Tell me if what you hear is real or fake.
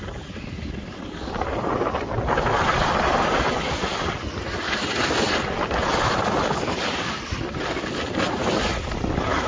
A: real